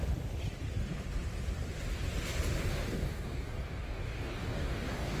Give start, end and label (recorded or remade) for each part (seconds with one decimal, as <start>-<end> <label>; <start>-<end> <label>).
0.0-2.7 recorded; 2.7-5.2 remade